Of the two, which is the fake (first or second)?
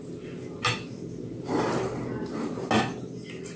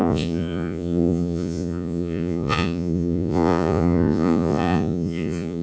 second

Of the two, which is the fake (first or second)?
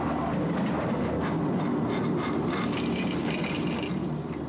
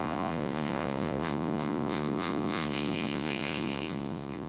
second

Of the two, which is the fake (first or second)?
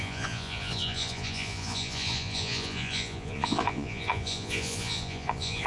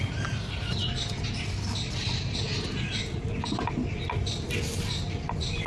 first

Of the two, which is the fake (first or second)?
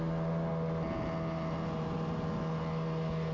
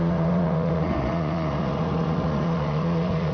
second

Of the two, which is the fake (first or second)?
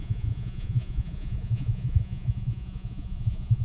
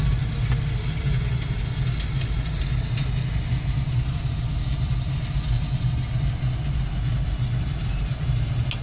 first